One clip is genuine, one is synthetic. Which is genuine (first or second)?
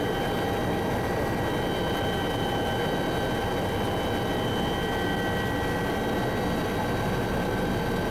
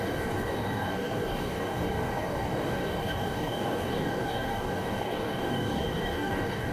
first